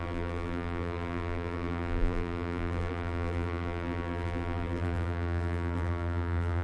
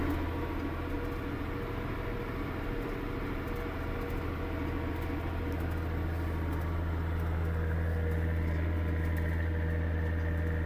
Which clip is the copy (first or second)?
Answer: first